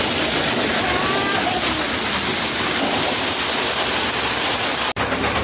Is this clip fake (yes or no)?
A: no